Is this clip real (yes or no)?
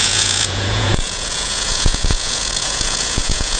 no